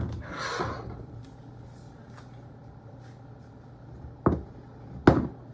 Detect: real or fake real